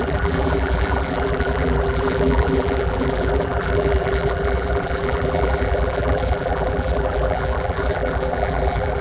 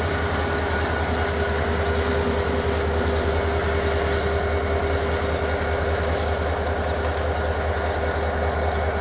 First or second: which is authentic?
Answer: second